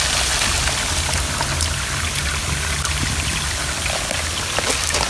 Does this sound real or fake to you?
real